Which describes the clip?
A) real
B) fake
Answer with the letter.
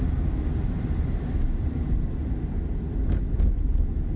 A